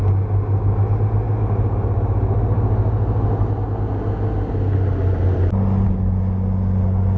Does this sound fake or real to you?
real